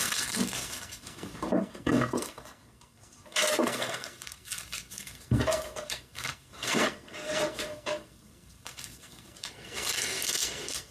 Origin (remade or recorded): remade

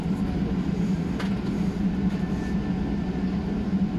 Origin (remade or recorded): recorded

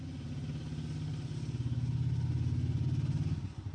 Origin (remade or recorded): recorded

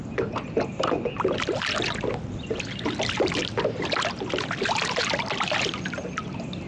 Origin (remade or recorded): recorded